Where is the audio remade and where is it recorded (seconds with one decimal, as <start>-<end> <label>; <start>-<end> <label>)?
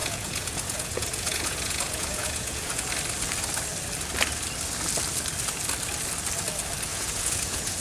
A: 0.0-2.9 remade; 2.9-6.9 recorded; 6.9-7.8 remade